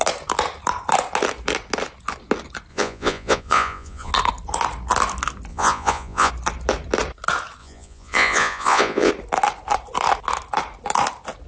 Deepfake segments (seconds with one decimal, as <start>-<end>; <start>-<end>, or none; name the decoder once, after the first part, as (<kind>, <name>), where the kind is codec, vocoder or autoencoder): 2.7-4.1 (vocoder, Vocos); 5.5-6.3; 7.6-9.1